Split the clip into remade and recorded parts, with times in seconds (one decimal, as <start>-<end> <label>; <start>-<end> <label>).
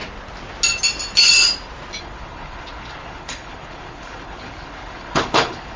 0.0-2.0 recorded; 2.0-5.8 remade